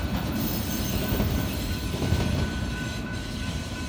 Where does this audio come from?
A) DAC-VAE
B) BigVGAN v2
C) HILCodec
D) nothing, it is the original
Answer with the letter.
B